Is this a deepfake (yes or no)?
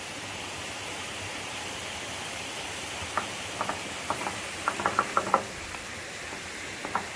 no